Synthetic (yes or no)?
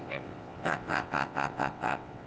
yes